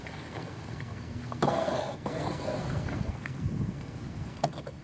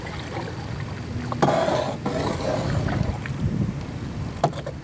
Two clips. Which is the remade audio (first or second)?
first